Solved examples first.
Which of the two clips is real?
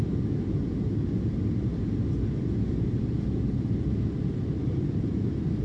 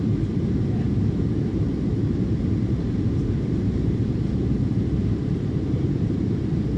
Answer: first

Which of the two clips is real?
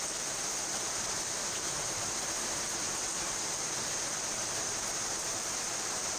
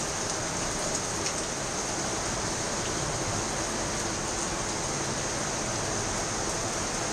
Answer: second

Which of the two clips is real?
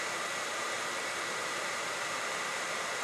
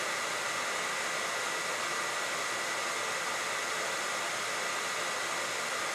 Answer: second